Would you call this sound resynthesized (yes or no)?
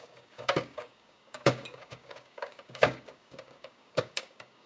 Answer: yes